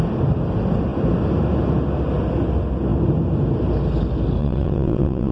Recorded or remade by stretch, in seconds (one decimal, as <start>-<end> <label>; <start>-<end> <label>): 0.0-4.4 recorded; 4.4-5.3 remade